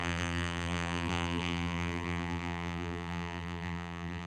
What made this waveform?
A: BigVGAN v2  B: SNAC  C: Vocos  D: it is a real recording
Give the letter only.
A